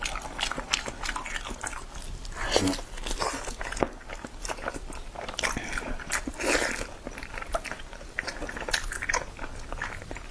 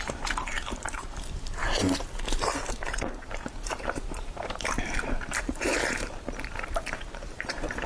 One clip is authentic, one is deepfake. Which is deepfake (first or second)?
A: second